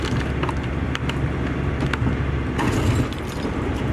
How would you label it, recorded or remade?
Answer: recorded